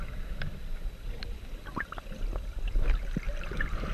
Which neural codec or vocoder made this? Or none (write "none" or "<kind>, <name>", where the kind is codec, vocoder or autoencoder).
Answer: none